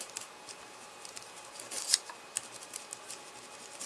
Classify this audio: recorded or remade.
remade